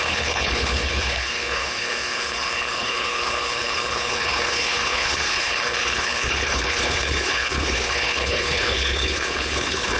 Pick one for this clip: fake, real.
fake